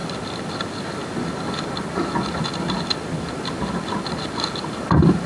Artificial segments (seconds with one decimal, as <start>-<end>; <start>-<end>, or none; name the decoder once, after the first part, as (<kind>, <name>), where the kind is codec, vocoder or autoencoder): none